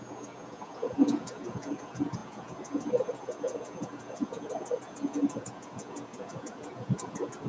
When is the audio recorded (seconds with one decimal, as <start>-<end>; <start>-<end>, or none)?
none